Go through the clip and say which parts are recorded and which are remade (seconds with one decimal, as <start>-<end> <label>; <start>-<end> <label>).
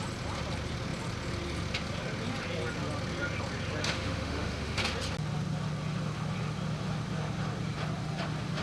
0.0-3.8 recorded; 3.8-4.8 remade; 4.8-8.6 recorded